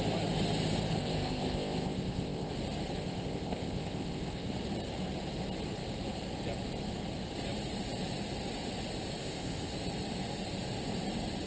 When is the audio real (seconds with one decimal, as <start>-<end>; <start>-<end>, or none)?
0.0-1.0; 2.5-3.0; 4.5-9.2; 9.7-11.5